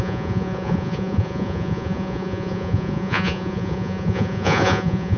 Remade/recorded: remade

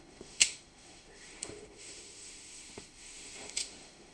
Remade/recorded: remade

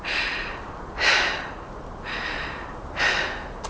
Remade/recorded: recorded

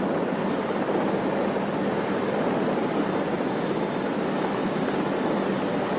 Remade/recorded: recorded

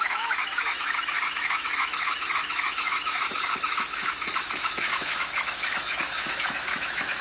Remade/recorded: remade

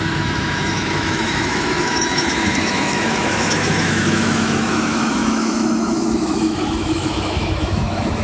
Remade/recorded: remade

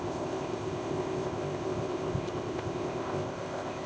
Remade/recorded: remade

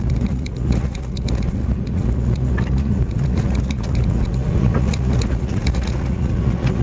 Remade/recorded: remade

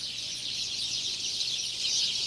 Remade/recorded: remade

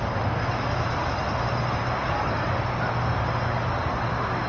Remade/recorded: recorded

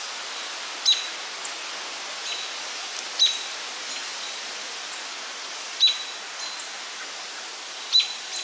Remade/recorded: recorded